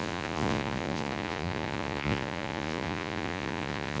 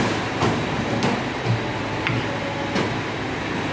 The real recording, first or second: second